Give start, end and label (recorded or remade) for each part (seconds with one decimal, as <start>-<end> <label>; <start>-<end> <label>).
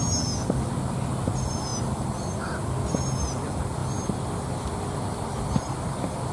0.0-6.3 recorded